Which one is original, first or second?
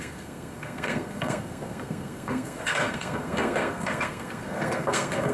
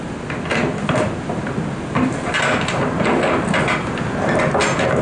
second